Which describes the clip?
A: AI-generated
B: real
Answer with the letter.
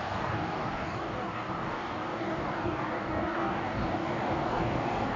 A